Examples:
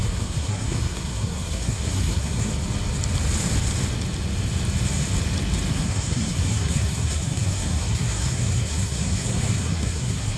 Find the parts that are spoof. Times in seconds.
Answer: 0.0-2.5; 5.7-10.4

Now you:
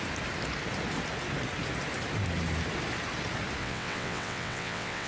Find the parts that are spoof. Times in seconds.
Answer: 3.6-5.1

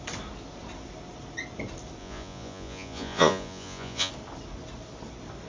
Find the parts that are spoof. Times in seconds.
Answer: 2.0-4.1

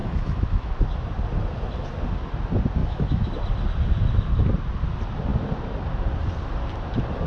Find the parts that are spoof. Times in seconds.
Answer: 0.0-0.7; 2.8-3.3

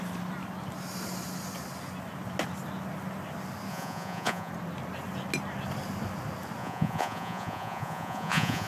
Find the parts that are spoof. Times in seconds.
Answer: 3.7-4.5; 6.6-8.7